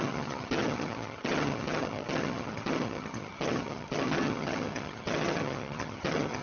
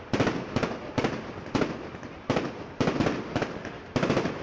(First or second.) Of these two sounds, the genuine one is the second